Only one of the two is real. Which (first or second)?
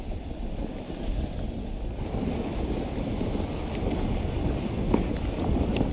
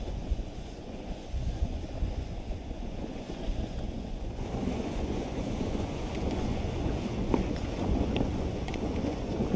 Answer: first